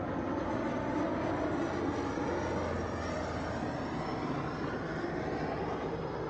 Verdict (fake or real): real